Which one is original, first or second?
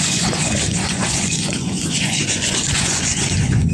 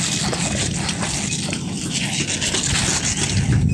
second